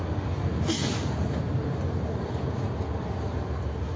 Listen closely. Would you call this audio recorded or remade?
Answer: recorded